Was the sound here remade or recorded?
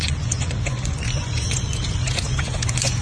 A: remade